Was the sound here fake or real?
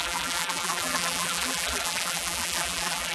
fake